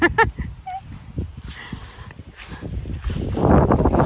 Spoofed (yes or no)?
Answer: no